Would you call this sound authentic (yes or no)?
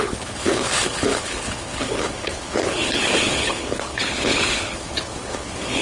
no